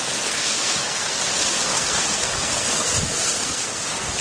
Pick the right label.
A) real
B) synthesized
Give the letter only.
B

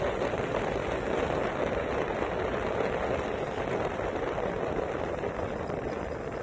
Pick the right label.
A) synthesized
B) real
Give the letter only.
B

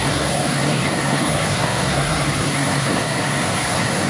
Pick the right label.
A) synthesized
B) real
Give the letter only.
A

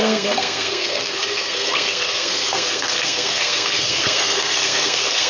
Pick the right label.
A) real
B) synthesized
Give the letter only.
B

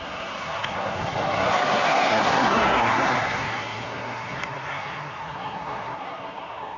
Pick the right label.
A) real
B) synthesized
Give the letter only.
B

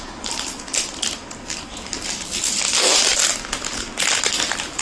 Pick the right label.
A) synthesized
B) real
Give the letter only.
B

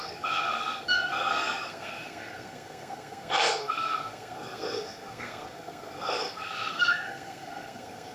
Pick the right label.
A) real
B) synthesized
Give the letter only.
B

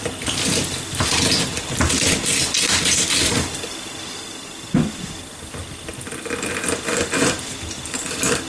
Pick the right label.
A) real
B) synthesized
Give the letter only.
A